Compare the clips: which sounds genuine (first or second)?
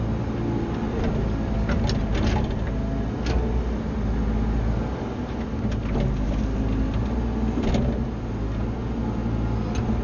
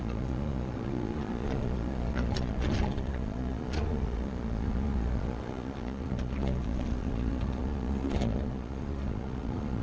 first